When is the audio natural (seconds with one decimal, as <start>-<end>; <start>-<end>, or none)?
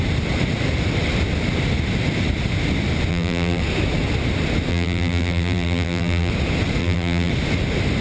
0.0-3.1; 3.6-4.7; 6.3-6.8; 7.3-8.0